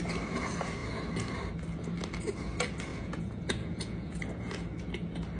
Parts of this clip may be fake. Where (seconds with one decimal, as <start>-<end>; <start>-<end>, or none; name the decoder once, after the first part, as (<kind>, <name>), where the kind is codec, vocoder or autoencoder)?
2.9-4.2 (vocoder, Vocos)